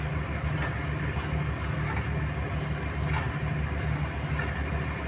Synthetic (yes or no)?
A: no